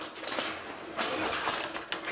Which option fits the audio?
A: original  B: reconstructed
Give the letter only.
A